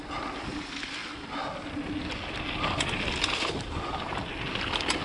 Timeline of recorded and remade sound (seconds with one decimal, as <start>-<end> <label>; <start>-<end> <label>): 0.0-5.0 recorded